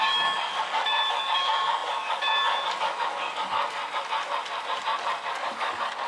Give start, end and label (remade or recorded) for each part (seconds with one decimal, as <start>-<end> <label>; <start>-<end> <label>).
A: 0.0-3.8 remade; 3.8-5.3 recorded; 5.3-6.1 remade